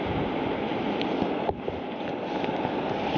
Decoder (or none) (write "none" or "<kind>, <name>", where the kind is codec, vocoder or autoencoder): none